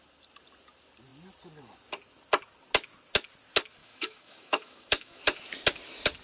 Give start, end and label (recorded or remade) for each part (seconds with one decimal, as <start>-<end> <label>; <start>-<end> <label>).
0.0-3.8 recorded; 3.8-5.2 remade; 5.2-6.2 recorded